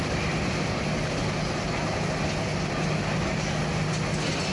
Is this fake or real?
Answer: real